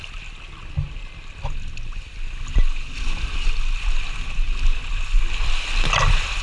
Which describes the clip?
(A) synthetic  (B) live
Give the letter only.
B